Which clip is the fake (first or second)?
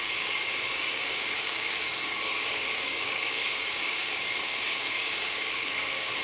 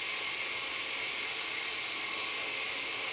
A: first